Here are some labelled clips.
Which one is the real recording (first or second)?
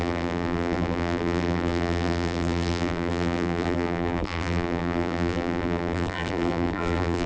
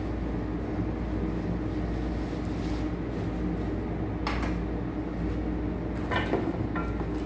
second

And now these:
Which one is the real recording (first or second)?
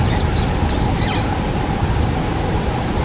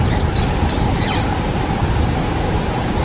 first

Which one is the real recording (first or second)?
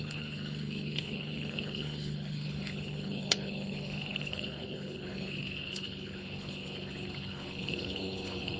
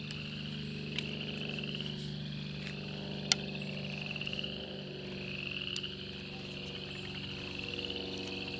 second